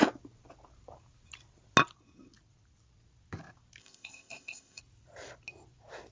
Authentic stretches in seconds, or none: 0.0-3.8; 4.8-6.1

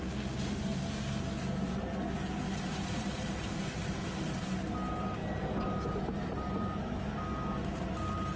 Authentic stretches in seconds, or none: 0.0-8.4

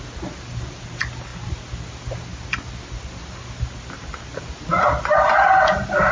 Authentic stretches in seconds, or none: 0.0-6.1

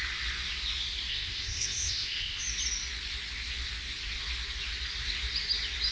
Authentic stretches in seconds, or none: 0.0-1.1; 2.4-5.9

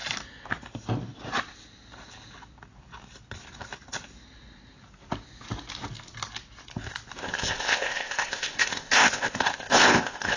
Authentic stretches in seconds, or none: 0.0-7.2

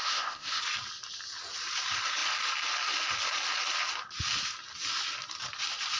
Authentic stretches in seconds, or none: 0.6-6.0

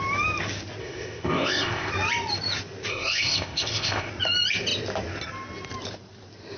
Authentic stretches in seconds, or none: 0.0-0.8; 1.9-2.9; 4.1-6.6